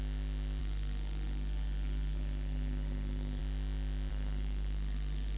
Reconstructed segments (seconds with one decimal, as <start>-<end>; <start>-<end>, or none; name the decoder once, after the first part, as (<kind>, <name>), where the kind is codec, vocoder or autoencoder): 0.6-3.4 (codec, SNAC); 4.1-5.4